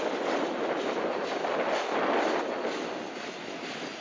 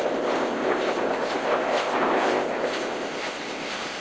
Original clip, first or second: first